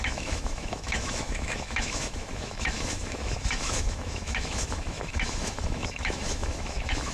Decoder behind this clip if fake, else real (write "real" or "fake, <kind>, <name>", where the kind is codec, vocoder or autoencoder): fake, autoencoder, DAC-VAE